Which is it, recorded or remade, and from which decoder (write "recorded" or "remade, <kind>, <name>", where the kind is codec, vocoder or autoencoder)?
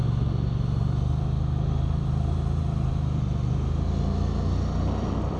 recorded